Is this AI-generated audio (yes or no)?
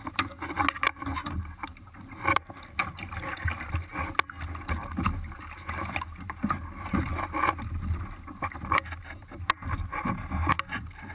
no